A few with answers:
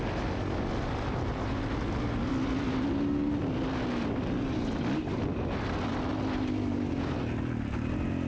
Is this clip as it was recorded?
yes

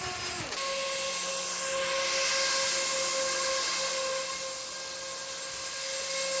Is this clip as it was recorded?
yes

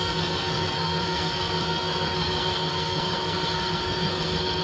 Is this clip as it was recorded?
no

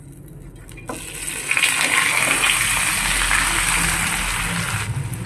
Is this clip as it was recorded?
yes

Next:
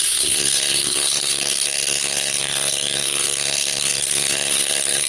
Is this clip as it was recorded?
no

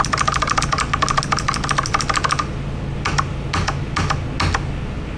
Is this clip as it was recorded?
yes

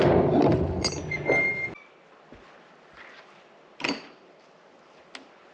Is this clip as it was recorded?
yes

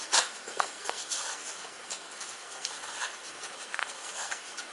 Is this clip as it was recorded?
no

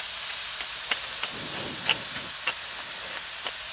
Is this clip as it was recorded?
yes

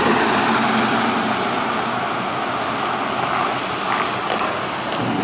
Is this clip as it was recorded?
yes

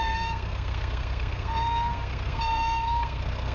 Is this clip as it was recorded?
no